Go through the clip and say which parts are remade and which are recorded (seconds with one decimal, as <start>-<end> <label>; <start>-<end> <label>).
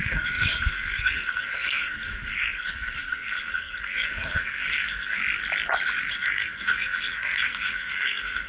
0.0-5.2 remade; 5.2-6.1 recorded; 6.1-8.5 remade